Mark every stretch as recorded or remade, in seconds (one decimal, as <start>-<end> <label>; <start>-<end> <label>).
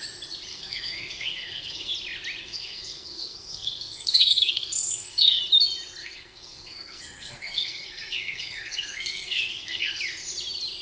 0.0-0.5 recorded; 0.5-1.9 remade; 1.9-2.4 recorded; 2.4-5.4 remade; 5.4-6.0 recorded; 6.0-10.0 remade; 10.0-10.8 recorded